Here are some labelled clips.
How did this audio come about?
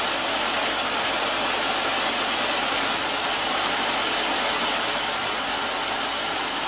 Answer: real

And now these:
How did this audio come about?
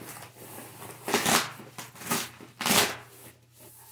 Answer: real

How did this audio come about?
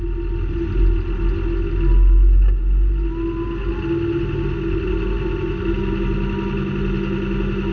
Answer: real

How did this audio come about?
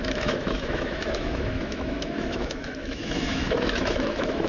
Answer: fake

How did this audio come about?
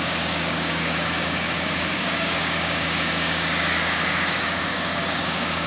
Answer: fake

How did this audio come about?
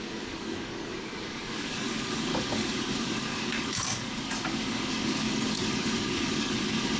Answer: fake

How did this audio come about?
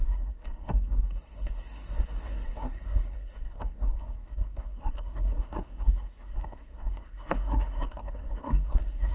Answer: fake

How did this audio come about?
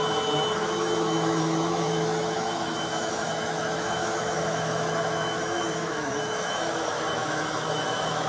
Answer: fake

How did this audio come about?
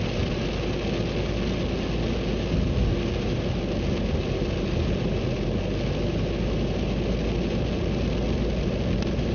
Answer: real